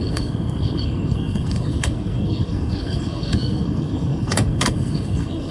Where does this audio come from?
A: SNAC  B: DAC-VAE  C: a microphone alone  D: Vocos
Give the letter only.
A